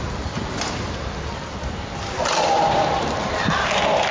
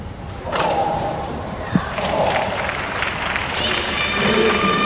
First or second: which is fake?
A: second